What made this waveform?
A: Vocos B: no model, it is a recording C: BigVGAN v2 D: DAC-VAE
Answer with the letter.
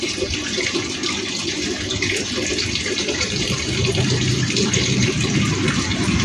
C